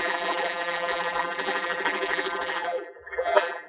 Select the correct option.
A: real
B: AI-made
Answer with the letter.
B